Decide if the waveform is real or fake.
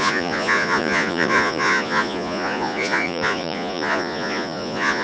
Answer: fake